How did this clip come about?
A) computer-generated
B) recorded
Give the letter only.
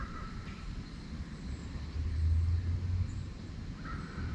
B